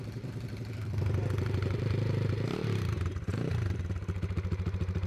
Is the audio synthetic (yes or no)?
yes